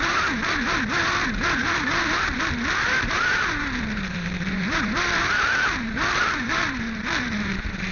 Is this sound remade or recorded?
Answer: remade